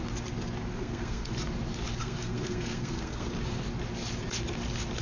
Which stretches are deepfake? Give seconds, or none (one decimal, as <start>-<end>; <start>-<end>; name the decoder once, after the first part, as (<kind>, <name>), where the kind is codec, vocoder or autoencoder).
0.7-1.3 (codec, SNAC); 2.0-3.3